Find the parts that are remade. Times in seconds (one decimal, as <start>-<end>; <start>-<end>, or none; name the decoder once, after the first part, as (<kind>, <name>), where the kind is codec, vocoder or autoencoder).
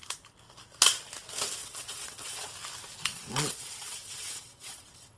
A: 1.6-2.5 (vocoder, WaveNeXt); 3.1-5.2